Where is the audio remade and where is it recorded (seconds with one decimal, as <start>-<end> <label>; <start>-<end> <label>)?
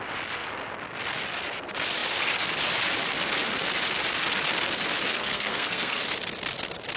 0.0-5.1 recorded; 5.1-6.0 remade; 6.0-7.0 recorded